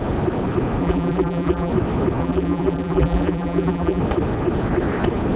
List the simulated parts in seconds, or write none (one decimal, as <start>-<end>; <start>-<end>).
0.8-1.7; 2.2-4.0